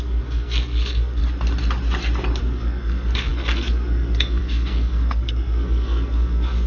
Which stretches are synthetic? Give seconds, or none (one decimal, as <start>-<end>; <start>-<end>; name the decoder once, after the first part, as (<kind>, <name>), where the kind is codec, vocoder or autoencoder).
0.0-1.2 (codec, SNAC); 2.4-6.7